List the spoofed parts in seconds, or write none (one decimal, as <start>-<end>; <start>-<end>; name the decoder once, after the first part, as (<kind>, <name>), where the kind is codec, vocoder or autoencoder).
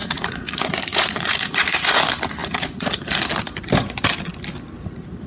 0.0-2.0 (vocoder, Vocos); 2.4-2.9